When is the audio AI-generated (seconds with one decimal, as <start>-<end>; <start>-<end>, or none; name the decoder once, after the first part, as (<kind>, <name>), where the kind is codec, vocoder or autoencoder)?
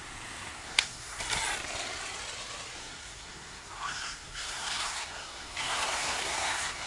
0.5-1.2 (codec, SNAC); 2.8-6.9